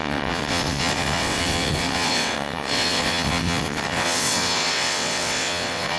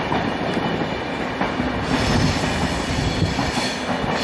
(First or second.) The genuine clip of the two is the second